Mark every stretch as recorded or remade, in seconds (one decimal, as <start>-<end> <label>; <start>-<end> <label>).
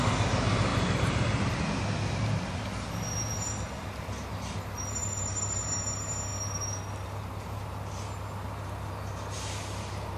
0.0-0.7 recorded; 0.7-1.7 remade; 1.7-5.0 recorded; 5.0-5.7 remade; 5.7-10.2 recorded